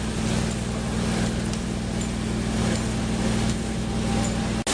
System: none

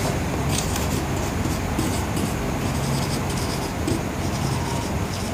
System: none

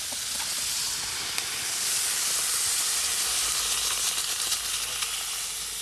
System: none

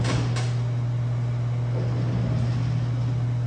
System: none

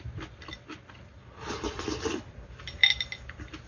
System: none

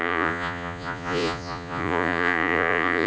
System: vocoder, Vocos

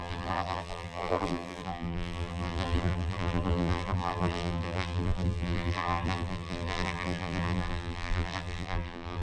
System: vocoder, BigVGAN v2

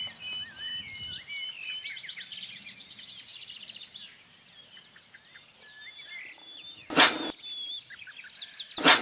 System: none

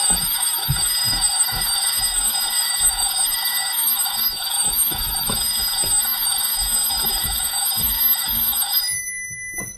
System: autoencoder, DAC-VAE